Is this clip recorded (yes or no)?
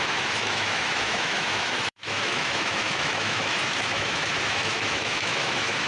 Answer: no